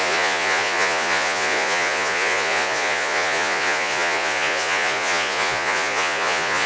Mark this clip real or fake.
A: fake